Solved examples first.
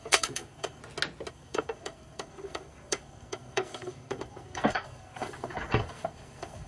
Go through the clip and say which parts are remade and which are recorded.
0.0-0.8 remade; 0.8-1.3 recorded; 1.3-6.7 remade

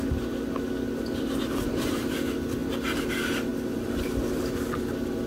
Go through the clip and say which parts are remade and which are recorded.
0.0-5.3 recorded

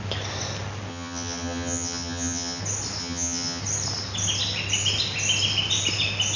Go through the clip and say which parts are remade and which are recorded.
0.0-0.9 recorded; 0.9-2.6 remade; 2.6-3.0 recorded; 3.0-3.6 remade; 3.6-6.4 recorded

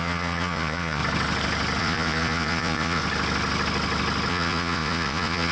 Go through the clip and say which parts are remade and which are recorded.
0.0-1.0 remade; 1.0-1.8 recorded; 1.8-3.0 remade; 3.0-4.3 recorded; 4.3-5.5 remade

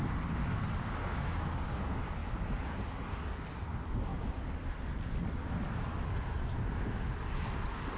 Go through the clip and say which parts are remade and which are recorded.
0.0-1.0 recorded; 1.0-1.8 remade; 1.8-8.0 recorded

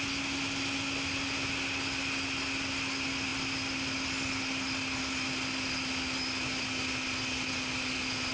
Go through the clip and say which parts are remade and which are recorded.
0.0-8.3 recorded